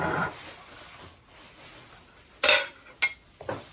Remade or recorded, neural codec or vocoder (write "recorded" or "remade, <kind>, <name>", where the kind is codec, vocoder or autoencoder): recorded